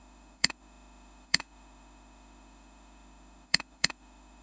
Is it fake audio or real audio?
fake